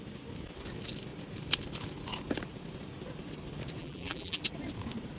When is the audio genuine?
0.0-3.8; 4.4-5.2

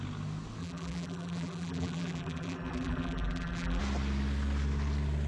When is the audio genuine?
0.0-0.6; 3.8-5.3

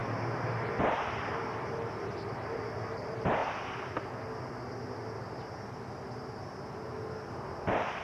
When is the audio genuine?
0.0-1.9; 3.4-7.3

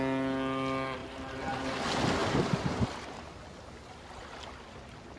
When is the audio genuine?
0.0-1.0; 1.6-2.2; 3.3-5.2

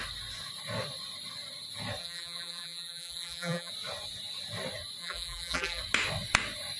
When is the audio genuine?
0.0-2.0; 3.7-5.0; 5.8-6.8

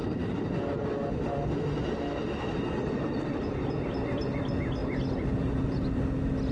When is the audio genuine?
0.0-6.5

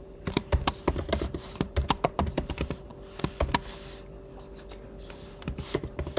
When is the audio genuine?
2.9-5.0